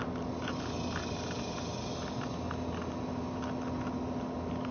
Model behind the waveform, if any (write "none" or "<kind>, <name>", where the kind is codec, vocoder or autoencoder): none